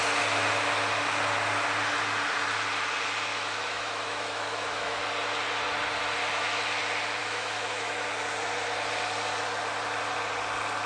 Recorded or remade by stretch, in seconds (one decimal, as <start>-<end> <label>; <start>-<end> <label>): 0.0-3.3 recorded; 3.3-5.0 remade; 5.0-6.2 recorded; 6.2-6.8 remade; 6.8-7.2 recorded; 7.2-8.1 remade; 8.1-10.9 recorded